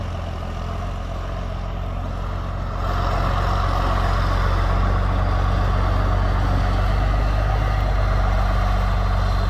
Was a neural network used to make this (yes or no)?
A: no